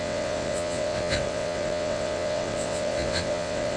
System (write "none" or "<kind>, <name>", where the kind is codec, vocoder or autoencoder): vocoder, WaveNeXt